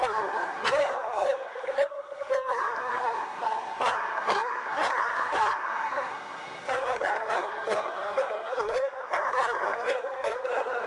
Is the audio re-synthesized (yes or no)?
yes